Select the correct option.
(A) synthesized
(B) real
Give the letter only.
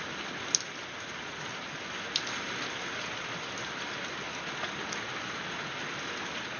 B